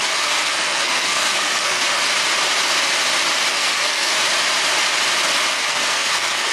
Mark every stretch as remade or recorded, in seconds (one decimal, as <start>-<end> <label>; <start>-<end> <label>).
0.0-1.8 remade; 1.8-3.5 recorded; 3.5-4.1 remade; 4.1-5.5 recorded; 5.5-6.5 remade